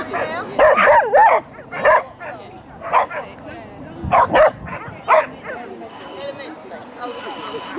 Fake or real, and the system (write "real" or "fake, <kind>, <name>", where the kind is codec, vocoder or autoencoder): real